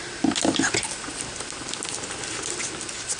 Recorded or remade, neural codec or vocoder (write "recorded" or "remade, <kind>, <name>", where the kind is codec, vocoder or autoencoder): recorded